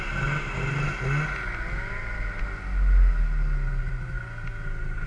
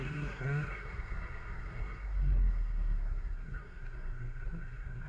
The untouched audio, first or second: first